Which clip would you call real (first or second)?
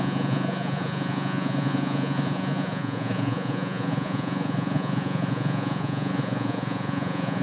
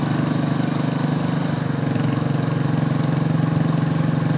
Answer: second